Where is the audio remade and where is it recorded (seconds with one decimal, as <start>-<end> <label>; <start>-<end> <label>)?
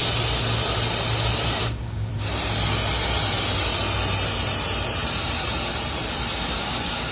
0.0-1.6 recorded; 1.6-2.1 remade; 2.1-6.4 recorded; 6.4-7.1 remade